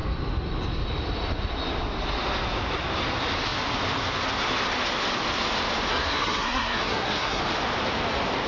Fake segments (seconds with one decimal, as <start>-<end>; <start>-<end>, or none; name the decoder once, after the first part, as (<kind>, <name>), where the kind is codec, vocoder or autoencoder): 5.9-7.4 (codec, SNAC)